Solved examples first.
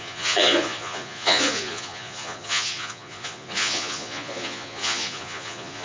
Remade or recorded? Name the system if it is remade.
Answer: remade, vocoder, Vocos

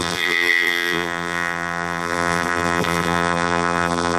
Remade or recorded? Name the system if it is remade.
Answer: remade, vocoder, BigVGAN v2